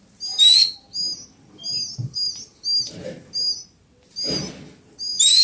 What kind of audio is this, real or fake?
real